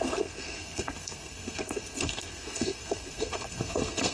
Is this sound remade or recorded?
remade